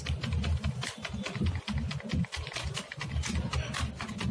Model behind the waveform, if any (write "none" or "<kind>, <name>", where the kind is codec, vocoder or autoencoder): none